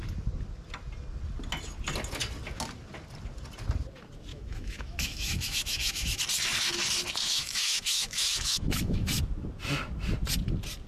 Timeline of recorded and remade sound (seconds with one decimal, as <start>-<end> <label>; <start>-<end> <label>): 0.0-4.3 recorded; 4.3-6.2 remade; 6.2-7.2 recorded; 7.2-9.2 remade; 9.2-10.9 recorded